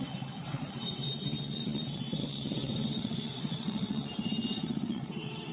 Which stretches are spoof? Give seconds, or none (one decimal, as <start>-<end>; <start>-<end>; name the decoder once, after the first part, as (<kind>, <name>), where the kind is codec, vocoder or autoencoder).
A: 0.0-5.5 (vocoder, WaveNeXt)